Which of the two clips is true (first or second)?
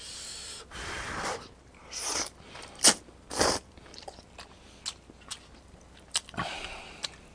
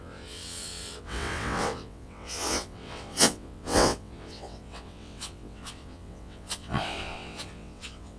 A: first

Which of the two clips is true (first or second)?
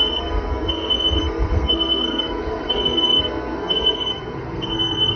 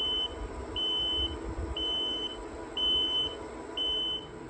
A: second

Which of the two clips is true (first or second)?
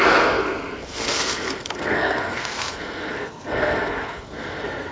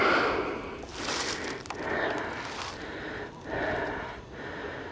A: second